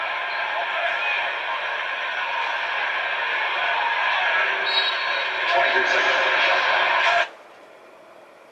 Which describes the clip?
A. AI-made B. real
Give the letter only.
B